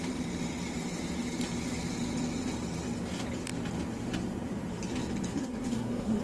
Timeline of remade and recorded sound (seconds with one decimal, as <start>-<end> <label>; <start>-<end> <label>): 0.0-5.3 recorded; 5.3-6.2 remade